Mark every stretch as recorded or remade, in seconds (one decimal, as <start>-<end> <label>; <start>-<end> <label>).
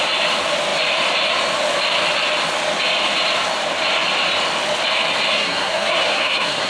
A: 0.0-5.3 recorded; 5.3-6.7 remade